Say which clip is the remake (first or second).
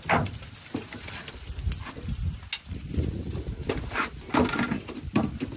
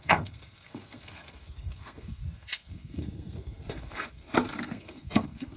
second